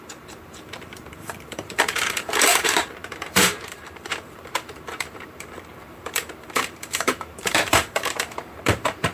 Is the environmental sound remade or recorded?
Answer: remade